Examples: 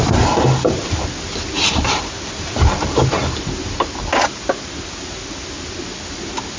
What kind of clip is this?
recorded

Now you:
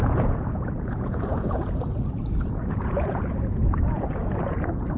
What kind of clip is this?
remade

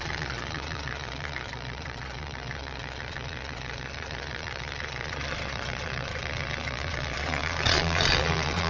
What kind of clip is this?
remade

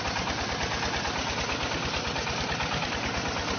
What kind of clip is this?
recorded